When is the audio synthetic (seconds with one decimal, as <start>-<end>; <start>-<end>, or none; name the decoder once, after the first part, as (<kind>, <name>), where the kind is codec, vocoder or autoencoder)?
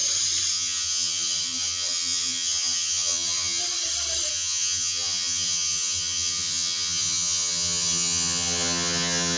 0.5-3.6 (vocoder, HiFi-GAN); 4.3-9.4